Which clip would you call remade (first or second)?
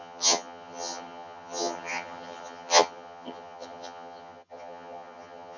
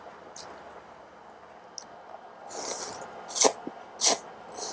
first